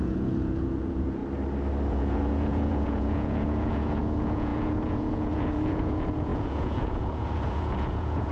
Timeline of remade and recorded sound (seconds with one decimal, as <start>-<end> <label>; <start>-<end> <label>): 0.0-1.2 remade; 1.2-1.9 recorded; 1.9-8.3 remade